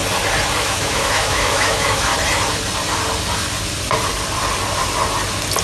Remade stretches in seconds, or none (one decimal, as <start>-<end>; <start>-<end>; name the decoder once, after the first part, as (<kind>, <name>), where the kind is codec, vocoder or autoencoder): 0.6-2.1 (autoencoder, DAC-VAE)